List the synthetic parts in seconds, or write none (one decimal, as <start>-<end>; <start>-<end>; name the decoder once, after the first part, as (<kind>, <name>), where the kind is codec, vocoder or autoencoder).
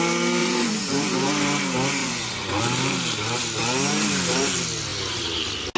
0.4-1.3 (vocoder, Vocos); 2.0-2.6